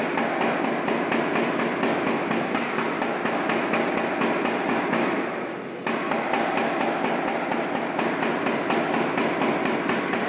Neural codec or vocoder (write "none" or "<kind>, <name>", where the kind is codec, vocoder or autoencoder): none